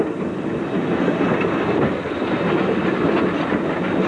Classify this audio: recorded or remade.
recorded